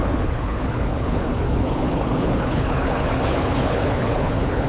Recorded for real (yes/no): no